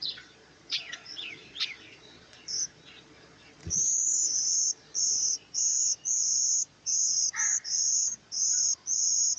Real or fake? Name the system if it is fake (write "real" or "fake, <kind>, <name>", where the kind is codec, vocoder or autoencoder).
fake, vocoder, Vocos